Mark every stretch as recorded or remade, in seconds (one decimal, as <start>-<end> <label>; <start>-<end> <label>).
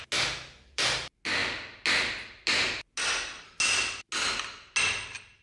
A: 0.0-5.4 recorded